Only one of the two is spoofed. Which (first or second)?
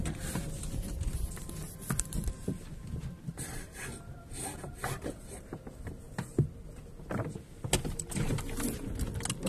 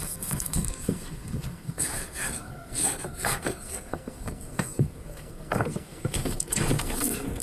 second